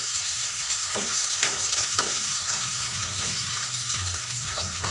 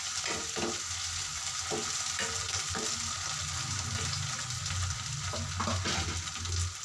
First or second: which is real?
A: second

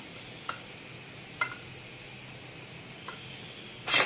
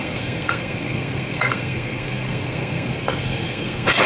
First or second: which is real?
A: first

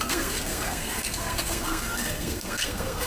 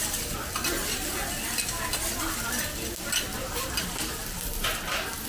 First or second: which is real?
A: second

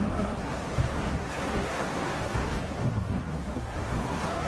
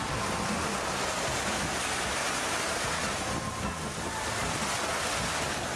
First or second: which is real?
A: second